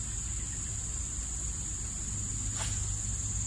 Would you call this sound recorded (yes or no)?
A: yes